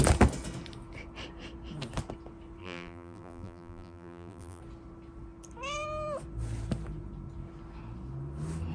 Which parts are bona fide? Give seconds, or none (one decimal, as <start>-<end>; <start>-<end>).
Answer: 0.0-2.6; 4.6-8.7